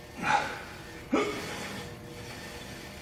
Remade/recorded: recorded